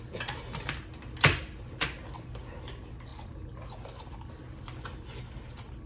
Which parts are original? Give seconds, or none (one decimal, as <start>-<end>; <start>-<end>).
0.0-5.9